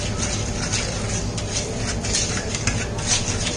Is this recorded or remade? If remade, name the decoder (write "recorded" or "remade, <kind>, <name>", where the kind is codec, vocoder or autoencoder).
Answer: recorded